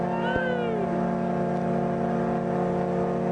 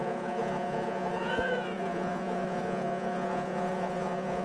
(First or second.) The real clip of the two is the first